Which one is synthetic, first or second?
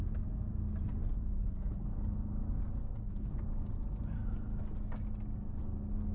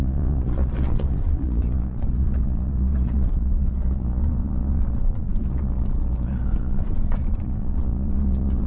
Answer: second